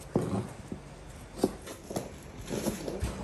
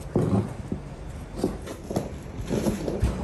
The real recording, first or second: first